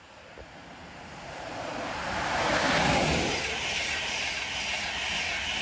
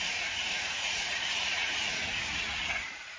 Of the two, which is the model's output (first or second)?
second